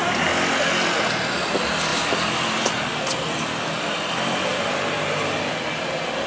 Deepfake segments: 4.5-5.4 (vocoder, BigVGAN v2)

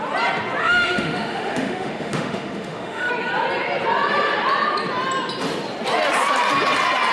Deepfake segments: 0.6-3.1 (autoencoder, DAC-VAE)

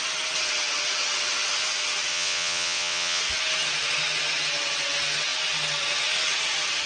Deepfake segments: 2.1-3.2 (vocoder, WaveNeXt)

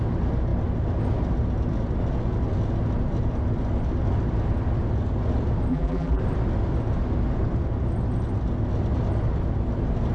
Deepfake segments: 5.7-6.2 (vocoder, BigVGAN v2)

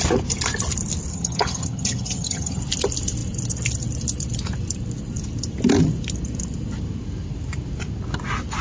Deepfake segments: 1.1-2.6 (vocoder, HiFi-GAN)